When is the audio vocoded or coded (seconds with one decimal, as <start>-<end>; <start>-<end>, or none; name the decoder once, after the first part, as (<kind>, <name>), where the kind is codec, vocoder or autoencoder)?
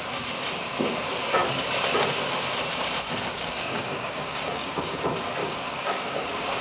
3.3-5.0 (codec, DAC); 5.4-6.6